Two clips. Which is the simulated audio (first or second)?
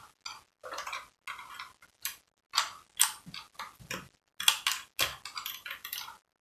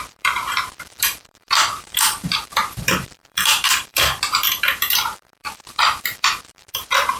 second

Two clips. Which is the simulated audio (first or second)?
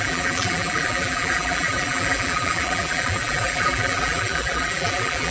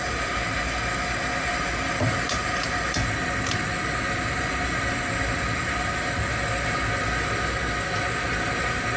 first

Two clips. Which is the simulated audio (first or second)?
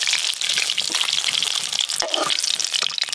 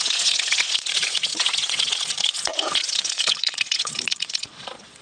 second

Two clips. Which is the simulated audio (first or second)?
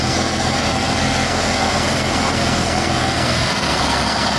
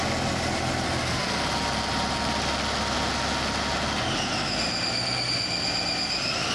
first